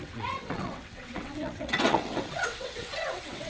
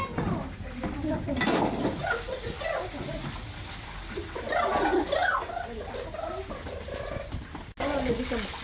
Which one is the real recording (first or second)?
second